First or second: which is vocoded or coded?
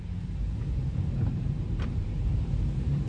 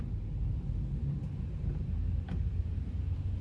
first